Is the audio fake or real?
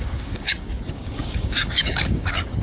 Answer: fake